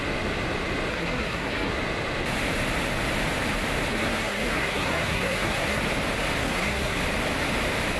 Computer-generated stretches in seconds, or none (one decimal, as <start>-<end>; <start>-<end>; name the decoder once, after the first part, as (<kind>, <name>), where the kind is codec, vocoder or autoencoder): 0.9-1.7 (codec, SNAC); 3.9-5.8; 6.4-7.0